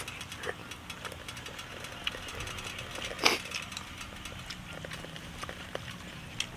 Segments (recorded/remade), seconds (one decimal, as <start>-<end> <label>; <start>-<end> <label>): 0.0-6.6 recorded